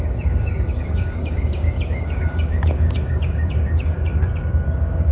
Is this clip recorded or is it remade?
remade